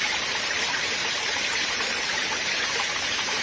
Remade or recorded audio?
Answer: remade